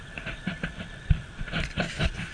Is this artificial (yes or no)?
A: yes